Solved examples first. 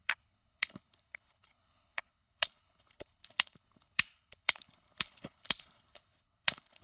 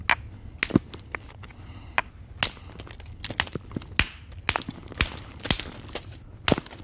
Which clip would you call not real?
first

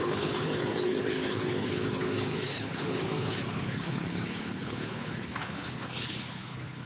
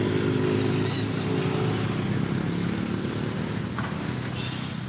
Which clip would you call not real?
first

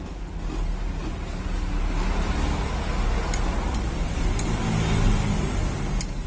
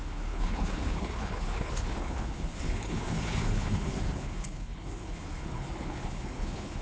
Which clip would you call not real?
second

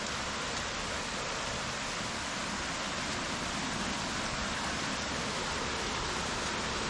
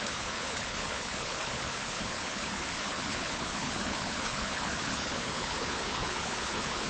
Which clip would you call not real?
second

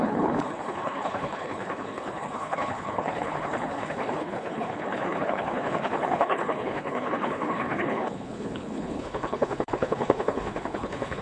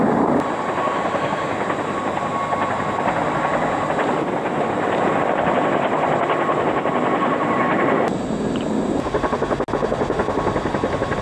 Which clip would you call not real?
first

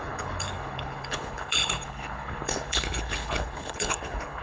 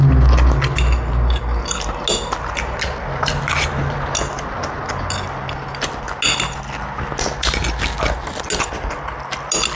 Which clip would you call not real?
first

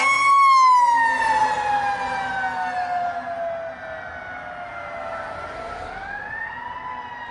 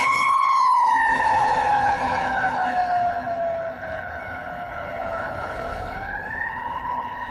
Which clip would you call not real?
second